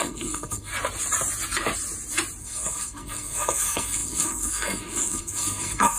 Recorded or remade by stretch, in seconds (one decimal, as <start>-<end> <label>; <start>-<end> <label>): 0.0-0.7 remade; 0.7-2.4 recorded; 2.4-6.0 remade

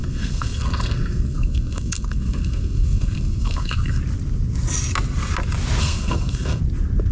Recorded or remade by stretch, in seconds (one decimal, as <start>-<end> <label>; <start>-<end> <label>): 0.0-4.0 remade; 4.0-5.8 recorded; 5.8-6.6 remade; 6.6-7.1 recorded

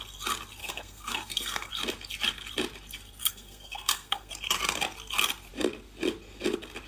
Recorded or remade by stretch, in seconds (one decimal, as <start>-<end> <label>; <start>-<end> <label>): 0.0-0.6 recorded; 0.6-1.7 remade; 1.7-3.2 recorded; 3.2-4.3 remade; 4.3-6.9 recorded

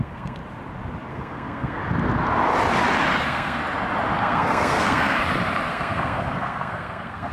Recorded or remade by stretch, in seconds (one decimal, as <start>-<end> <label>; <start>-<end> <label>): 0.0-0.4 remade; 0.4-1.1 recorded; 1.1-1.8 remade; 1.8-3.2 recorded; 3.2-3.6 remade; 3.6-4.2 recorded; 4.2-5.2 remade; 5.2-5.7 recorded; 5.7-7.3 remade